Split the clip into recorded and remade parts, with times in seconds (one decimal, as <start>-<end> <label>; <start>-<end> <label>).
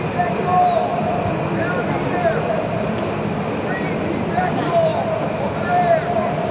0.0-4.9 remade; 4.9-5.6 recorded; 5.6-6.5 remade